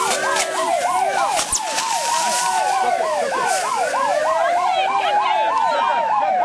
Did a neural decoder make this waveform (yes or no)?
no